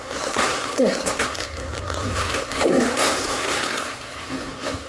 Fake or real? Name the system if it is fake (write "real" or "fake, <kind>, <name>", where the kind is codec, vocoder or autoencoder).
fake, codec, SNAC